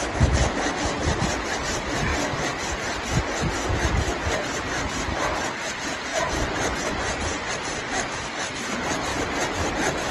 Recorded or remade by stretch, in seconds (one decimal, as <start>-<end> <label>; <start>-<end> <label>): 0.0-6.1 recorded; 6.1-7.5 remade; 7.5-10.1 recorded